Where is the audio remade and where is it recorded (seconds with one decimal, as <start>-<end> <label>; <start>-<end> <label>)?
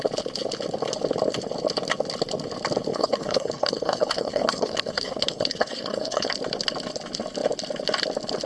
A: 0.0-2.9 recorded; 2.9-6.3 remade; 6.3-8.5 recorded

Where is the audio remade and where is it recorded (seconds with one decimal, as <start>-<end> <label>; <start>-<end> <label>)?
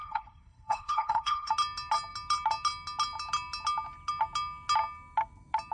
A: 0.0-1.5 remade; 1.5-5.7 recorded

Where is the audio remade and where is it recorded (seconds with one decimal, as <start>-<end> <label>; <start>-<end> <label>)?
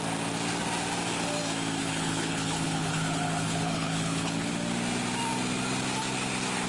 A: 0.0-1.8 recorded; 1.8-4.5 remade; 4.5-6.7 recorded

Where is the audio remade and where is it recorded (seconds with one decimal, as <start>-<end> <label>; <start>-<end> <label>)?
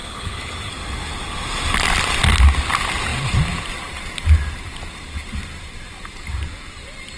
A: 0.0-0.7 remade; 0.7-7.2 recorded